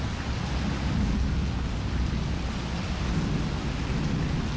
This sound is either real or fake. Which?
real